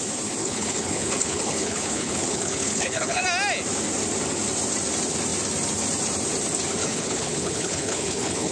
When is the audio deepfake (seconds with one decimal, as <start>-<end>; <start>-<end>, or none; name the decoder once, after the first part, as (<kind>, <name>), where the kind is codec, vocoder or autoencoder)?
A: 0.4-3.2 (codec, HILCodec); 6.8-8.5